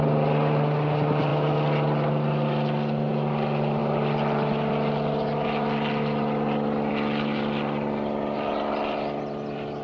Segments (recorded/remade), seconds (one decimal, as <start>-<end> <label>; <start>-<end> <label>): 0.0-9.8 recorded